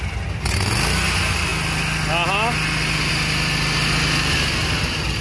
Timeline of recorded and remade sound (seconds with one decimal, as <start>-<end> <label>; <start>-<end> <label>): 0.0-5.2 recorded